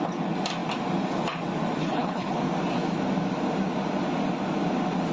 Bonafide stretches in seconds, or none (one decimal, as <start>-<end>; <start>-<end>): 0.0-1.8; 2.4-5.1